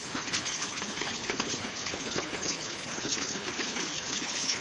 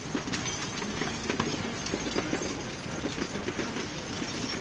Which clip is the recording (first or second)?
second